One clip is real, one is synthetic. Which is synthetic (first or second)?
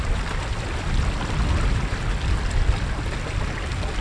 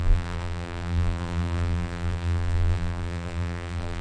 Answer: second